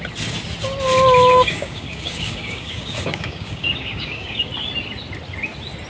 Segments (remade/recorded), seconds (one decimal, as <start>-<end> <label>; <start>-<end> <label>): 0.0-1.3 recorded; 1.3-4.5 remade; 4.5-5.9 recorded